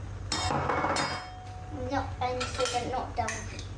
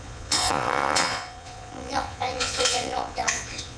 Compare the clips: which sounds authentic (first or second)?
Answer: first